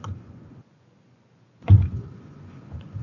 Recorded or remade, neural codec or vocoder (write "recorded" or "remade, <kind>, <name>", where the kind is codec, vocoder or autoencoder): remade, vocoder, Vocos